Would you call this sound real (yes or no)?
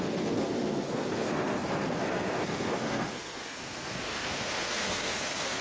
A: no